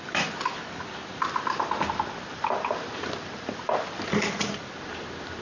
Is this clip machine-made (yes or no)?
no